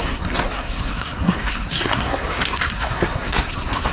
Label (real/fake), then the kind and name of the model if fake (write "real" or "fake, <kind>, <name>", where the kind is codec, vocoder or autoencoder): fake, codec, SNAC